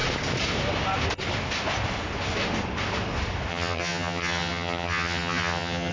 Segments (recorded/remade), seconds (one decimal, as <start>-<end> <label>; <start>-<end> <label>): 0.0-3.5 recorded; 3.5-5.9 remade